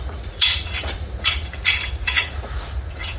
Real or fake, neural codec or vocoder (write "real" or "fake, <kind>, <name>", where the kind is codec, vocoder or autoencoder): fake, vocoder, Vocos